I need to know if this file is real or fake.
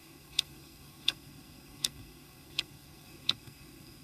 fake